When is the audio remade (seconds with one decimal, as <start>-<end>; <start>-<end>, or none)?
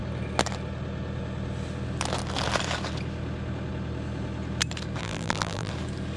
5.0-5.7